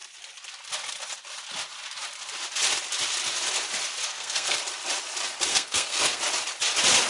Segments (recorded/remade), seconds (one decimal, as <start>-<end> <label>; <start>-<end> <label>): 0.0-4.1 recorded; 4.1-4.6 remade; 4.6-5.5 recorded; 5.5-6.2 remade; 6.2-7.1 recorded

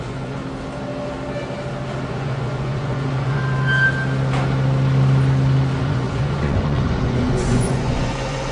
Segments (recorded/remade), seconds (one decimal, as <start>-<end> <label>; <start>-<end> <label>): 0.0-0.4 remade; 0.4-2.1 recorded; 2.1-3.4 remade; 3.4-5.8 recorded; 5.8-8.5 remade

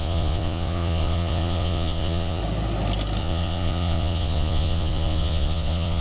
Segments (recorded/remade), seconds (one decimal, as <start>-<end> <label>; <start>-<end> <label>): 0.0-2.4 remade; 2.4-3.2 recorded; 3.2-6.0 remade

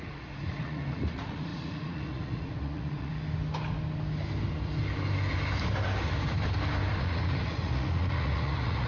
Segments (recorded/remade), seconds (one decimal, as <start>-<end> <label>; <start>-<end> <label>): 0.0-3.1 remade; 3.1-7.0 recorded; 7.0-8.9 remade